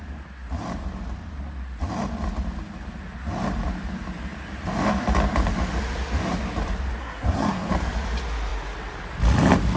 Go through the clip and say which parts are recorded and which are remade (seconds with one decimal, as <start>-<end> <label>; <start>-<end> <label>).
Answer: 0.0-7.0 recorded; 7.0-7.7 remade; 7.7-9.8 recorded